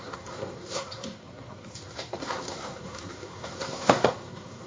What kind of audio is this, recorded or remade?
remade